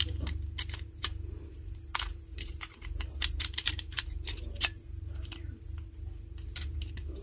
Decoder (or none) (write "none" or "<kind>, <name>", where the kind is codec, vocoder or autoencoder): vocoder, BigVGAN v2